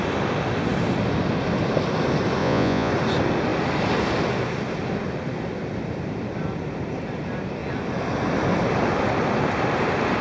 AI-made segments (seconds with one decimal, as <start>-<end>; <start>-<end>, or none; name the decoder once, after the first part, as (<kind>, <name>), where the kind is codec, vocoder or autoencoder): 2.4-2.9 (vocoder, Vocos)